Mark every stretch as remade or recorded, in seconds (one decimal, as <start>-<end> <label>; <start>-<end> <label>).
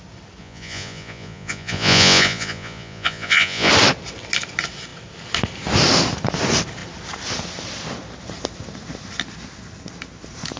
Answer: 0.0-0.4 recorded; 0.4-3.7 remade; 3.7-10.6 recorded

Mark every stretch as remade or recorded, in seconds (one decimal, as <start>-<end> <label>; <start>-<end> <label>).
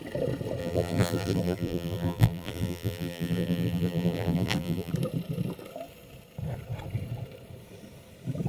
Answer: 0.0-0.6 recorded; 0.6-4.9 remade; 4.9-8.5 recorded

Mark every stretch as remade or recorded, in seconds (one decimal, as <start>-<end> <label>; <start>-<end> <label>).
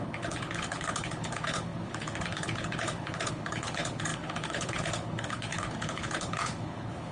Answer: 0.0-7.1 remade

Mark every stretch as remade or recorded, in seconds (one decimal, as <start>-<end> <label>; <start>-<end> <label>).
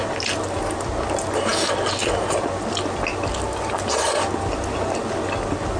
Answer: 0.0-5.8 recorded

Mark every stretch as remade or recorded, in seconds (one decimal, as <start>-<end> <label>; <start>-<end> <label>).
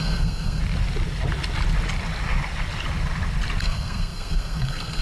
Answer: 0.0-0.6 remade; 0.6-3.6 recorded; 3.6-5.0 remade